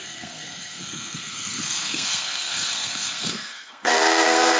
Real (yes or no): no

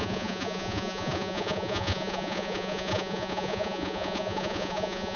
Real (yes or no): no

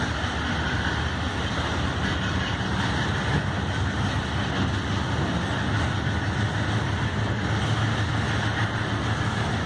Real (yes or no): yes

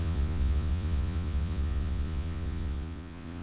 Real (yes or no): no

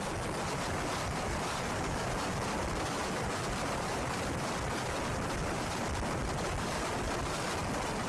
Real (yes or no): yes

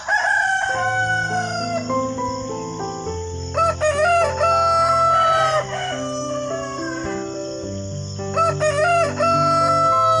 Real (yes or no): yes